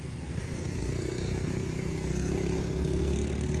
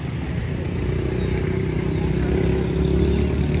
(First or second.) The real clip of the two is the second